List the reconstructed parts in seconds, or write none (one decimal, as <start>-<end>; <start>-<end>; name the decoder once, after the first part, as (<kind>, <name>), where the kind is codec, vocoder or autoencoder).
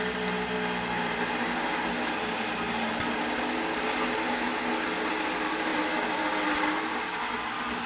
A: none